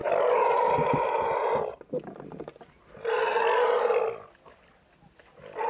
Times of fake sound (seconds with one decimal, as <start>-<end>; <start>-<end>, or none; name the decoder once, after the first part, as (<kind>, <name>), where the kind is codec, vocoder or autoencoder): 0.0-1.9 (vocoder, BigVGAN v2)